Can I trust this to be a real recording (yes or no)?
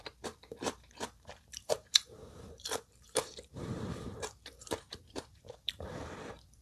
no